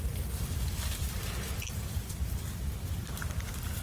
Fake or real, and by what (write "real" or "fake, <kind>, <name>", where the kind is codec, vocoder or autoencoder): fake, vocoder, BigVGAN v2